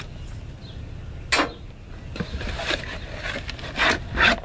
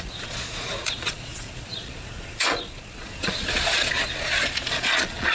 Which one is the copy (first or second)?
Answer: second